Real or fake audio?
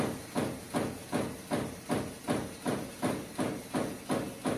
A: real